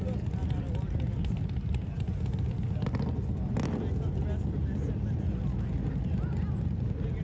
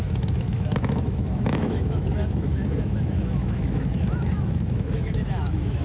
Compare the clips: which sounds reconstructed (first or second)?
second